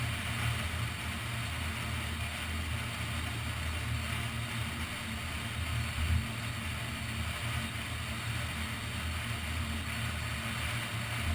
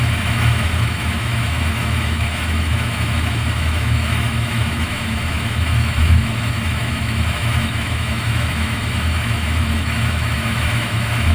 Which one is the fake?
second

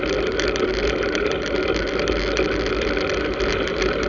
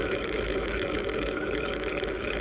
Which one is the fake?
second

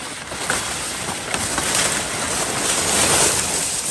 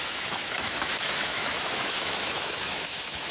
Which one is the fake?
second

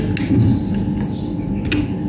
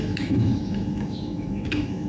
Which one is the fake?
second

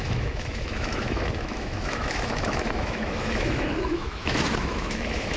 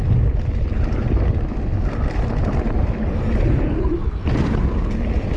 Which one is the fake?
first